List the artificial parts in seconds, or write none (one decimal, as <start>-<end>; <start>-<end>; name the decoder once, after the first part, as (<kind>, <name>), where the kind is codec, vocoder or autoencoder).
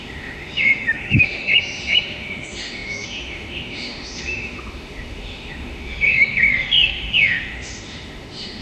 0.0-8.6 (autoencoder, DAC-VAE)